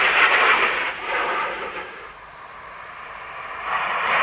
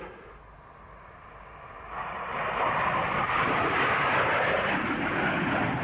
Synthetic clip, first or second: first